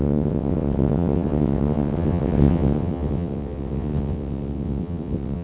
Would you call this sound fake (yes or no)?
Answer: yes